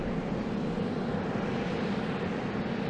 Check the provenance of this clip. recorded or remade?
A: remade